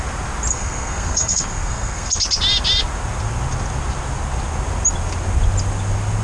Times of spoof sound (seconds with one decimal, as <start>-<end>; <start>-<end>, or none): 0.5-2.1

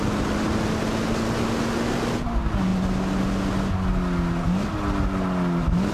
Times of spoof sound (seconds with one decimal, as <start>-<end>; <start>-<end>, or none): none

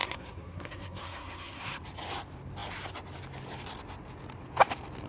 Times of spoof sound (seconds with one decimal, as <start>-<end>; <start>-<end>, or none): 0.0-1.8

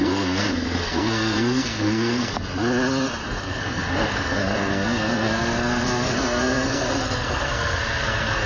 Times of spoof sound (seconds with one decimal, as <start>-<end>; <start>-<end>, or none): 0.0-2.3; 3.4-8.5